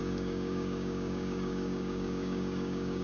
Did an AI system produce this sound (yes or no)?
yes